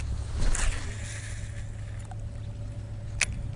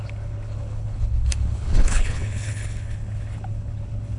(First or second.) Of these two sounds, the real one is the first